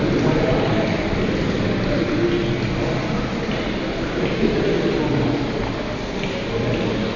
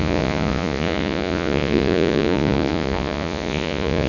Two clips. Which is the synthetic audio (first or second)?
second